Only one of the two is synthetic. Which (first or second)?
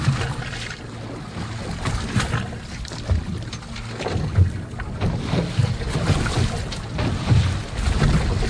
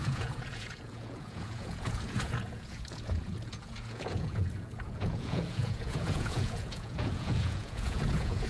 second